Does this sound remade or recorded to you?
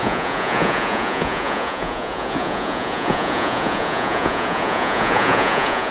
remade